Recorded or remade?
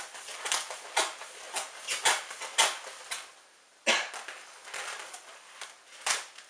recorded